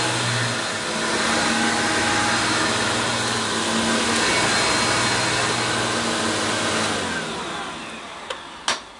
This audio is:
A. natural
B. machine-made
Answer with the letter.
A